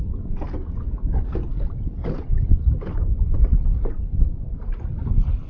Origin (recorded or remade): recorded